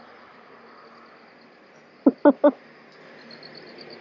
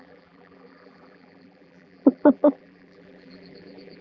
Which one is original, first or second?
first